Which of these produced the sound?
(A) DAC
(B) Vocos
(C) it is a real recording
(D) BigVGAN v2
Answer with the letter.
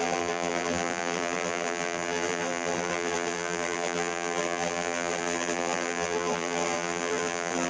D